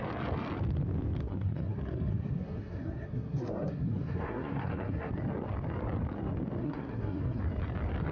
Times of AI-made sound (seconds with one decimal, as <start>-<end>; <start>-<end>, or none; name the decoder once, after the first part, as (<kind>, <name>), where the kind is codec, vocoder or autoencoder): 1.2-5.1 (codec, SNAC); 6.6-7.4